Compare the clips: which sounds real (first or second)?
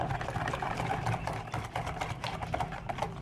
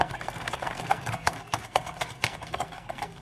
first